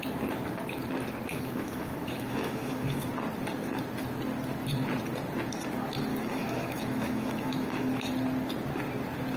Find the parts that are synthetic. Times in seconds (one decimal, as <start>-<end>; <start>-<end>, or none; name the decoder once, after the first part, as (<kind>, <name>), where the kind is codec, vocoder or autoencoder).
1.3-3.1 (autoencoder, DAC-VAE); 6.1-8.1